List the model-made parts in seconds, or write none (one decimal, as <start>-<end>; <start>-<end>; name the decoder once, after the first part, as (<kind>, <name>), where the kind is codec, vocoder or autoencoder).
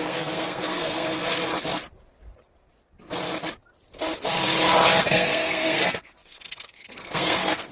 0.0-1.2 (codec, SNAC); 5.0-7.7